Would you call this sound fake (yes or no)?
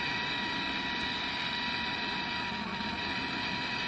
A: no